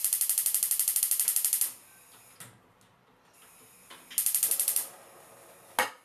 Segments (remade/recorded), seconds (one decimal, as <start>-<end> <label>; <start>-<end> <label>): 0.0-6.0 recorded